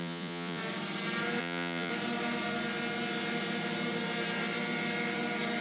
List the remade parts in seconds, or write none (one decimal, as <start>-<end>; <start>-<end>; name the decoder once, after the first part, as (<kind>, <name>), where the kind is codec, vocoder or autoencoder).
0.0-0.6 (vocoder, Vocos); 1.4-1.9